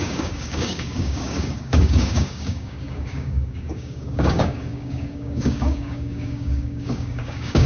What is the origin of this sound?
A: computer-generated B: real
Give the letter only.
A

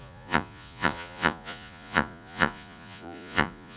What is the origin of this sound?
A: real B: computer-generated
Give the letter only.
B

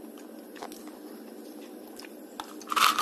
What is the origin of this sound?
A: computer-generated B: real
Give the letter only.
B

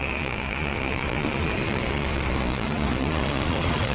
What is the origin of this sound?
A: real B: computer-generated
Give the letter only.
B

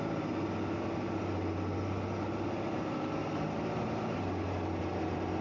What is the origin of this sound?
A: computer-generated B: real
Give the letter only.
B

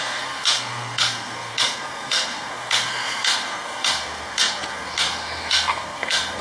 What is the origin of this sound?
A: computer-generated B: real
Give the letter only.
A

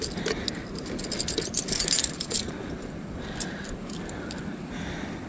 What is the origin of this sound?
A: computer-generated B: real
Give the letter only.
B